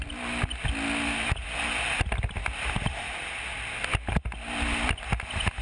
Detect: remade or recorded recorded